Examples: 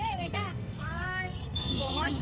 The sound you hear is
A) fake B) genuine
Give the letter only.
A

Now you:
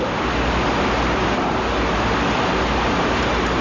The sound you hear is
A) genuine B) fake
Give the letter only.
A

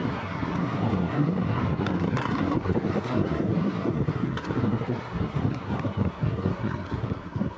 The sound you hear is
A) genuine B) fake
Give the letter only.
B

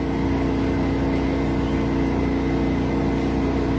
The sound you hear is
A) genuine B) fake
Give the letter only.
A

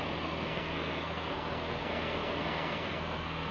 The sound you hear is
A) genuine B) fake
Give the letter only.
B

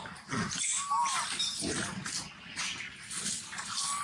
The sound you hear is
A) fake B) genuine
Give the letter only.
B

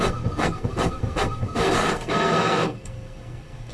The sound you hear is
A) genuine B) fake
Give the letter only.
B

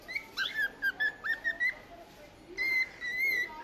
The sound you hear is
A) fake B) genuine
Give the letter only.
B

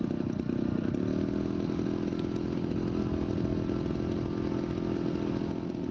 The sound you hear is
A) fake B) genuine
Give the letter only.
B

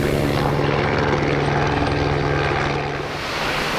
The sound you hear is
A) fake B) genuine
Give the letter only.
B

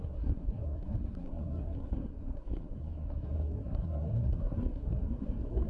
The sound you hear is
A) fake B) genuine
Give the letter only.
A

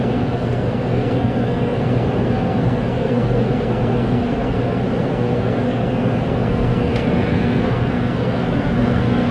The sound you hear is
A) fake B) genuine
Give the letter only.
A